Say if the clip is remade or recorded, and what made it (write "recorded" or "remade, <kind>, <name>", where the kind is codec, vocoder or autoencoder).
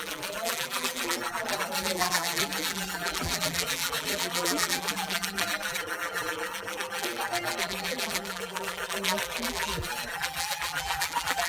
remade, vocoder, BigVGAN v2